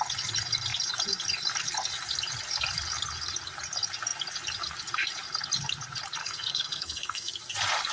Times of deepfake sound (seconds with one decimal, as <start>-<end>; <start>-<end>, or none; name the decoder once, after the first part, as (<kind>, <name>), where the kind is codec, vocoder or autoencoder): 6.2-7.3 (codec, SNAC)